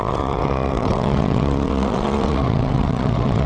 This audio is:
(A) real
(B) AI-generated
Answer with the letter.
B